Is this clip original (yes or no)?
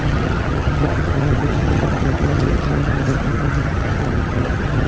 no